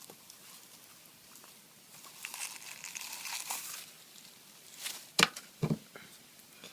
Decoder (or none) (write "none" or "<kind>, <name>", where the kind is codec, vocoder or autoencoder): none